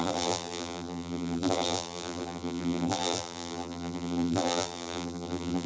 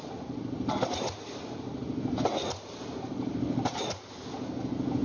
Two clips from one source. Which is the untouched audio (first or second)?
second